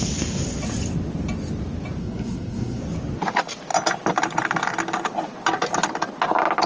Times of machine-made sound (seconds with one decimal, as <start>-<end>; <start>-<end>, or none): 2.0-2.8